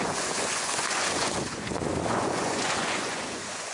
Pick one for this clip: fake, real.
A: fake